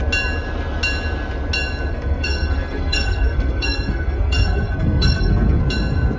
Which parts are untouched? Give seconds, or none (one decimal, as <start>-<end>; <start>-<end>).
0.0-1.9; 5.6-6.2